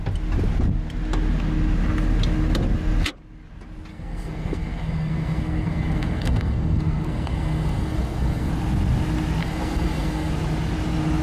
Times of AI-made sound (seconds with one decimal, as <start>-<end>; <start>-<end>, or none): 3.9-8.5; 9.4-10.3